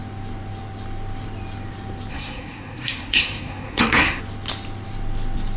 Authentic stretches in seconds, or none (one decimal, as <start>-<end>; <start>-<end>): 0.0-2.1; 4.2-5.6

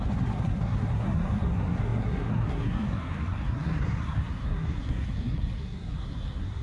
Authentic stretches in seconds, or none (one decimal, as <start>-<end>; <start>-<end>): none